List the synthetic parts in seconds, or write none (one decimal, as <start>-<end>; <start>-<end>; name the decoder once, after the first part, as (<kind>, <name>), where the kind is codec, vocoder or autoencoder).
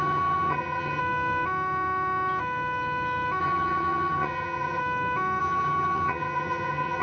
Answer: 0.0-1.0 (vocoder, HiFi-GAN); 3.4-4.8; 5.4-7.0